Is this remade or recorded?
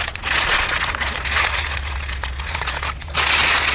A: remade